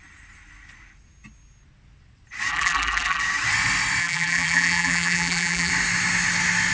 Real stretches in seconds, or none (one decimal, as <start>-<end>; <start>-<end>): 0.0-2.5; 3.2-4.0; 5.7-6.7